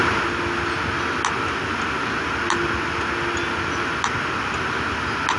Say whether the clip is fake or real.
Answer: real